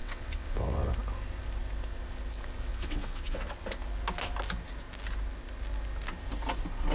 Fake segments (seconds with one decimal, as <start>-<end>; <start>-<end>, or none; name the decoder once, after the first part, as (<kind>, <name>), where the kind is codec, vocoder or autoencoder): 0.0-0.9 (vocoder, WaveNeXt); 2.7-3.5